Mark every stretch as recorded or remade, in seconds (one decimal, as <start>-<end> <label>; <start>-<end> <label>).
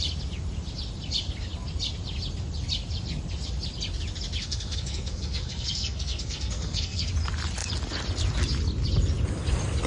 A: 0.0-4.4 recorded; 4.4-7.1 remade; 7.1-9.9 recorded